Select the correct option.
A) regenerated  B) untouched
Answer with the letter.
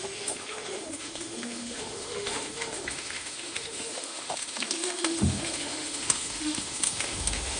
A